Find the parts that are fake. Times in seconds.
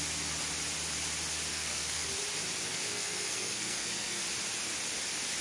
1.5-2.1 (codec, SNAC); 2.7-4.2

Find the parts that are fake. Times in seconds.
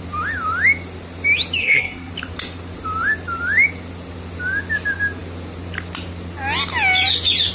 1.6-2.1 (codec, SNAC)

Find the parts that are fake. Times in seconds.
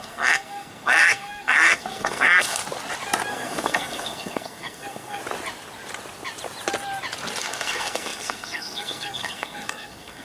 0.0-2.6 (codec, SNAC); 3.3-5.2; 7.4-10.2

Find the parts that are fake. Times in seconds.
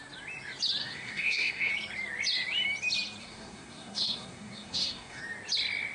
0.8-1.7 (codec, SNAC); 3.2-5.2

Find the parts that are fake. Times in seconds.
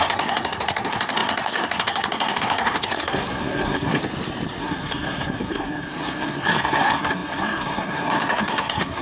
0.0-4.0 (codec, SNAC); 4.6-9.0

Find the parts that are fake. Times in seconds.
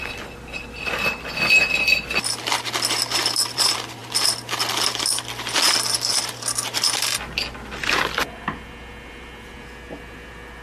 none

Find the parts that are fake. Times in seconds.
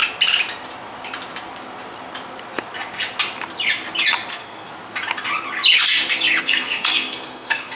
4.3-4.7 (codec, SNAC); 6.4-7.8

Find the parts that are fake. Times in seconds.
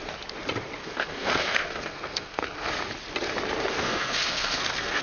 0.8-2.7 (codec, SNAC); 3.7-5.0